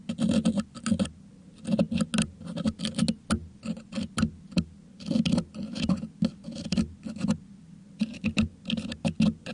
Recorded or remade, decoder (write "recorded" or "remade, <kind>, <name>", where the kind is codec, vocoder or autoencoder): recorded